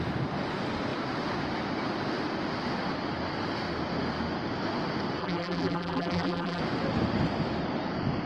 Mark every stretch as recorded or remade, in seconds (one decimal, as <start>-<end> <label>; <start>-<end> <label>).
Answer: 0.0-5.2 recorded; 5.2-6.6 remade; 6.6-8.3 recorded